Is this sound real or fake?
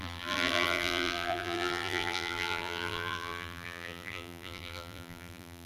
fake